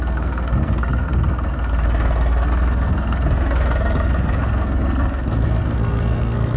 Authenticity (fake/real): fake